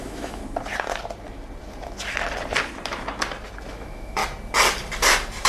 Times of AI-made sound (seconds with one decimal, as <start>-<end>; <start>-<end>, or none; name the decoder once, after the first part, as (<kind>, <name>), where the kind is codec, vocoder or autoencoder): 0.0-0.4 (autoencoder, DAC-VAE); 3.7-4.2